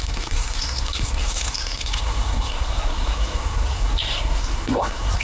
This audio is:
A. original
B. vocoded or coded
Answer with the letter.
B